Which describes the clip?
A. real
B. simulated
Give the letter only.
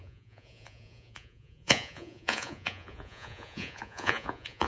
B